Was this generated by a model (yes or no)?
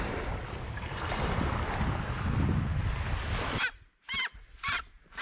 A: no